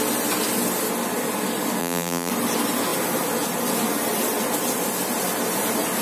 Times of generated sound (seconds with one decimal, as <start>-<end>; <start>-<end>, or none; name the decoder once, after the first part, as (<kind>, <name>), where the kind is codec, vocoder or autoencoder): 1.8-2.3 (vocoder, BigVGAN v2)